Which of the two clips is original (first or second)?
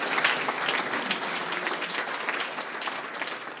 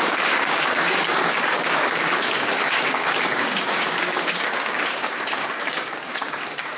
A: first